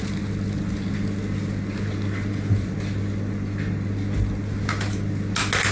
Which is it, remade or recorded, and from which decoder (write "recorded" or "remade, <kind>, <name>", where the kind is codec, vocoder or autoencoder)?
recorded